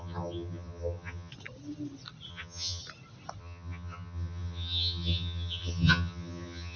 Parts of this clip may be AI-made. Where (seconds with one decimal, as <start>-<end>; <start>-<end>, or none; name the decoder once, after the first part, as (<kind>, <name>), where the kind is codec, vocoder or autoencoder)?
0.0-1.3 (vocoder, HiFi-GAN); 2.3-2.8; 3.4-6.8